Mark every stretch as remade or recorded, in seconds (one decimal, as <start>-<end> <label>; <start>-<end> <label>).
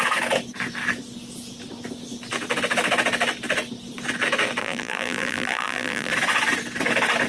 0.0-4.6 recorded; 4.6-6.1 remade; 6.1-7.3 recorded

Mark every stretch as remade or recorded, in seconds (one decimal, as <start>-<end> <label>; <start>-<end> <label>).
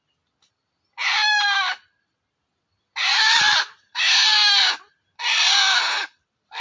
0.0-3.0 recorded; 3.0-4.0 remade; 4.0-6.6 recorded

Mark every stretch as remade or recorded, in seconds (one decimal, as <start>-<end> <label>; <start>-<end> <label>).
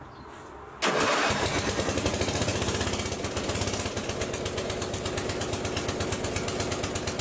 0.0-7.2 recorded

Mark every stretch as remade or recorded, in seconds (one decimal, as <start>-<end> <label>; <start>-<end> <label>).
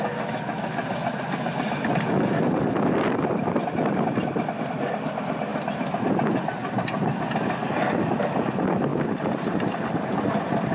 0.0-5.5 recorded; 5.5-6.1 remade; 6.1-10.7 recorded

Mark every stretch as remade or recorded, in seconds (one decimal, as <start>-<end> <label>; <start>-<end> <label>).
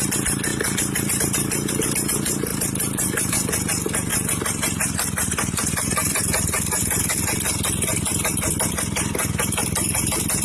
0.0-0.5 recorded; 0.5-1.7 remade; 1.7-2.5 recorded; 2.5-3.5 remade; 3.5-10.4 recorded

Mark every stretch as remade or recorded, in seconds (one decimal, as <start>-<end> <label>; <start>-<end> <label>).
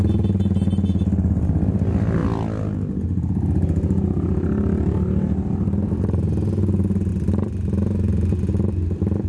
0.0-9.3 recorded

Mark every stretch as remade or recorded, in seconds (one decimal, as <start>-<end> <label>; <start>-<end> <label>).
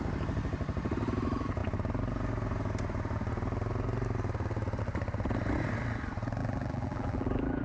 0.0-6.4 recorded; 6.4-7.6 remade